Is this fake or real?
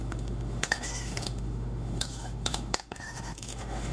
fake